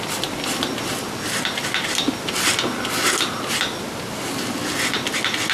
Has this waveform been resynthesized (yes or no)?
no